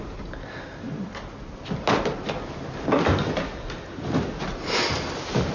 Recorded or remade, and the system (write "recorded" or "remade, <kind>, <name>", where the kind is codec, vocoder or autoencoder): recorded